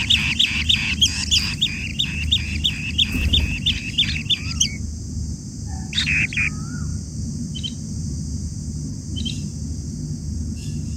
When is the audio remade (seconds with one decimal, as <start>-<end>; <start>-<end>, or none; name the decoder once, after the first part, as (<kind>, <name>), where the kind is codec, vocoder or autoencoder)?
6.9-8.2 (vocoder, BigVGAN v2)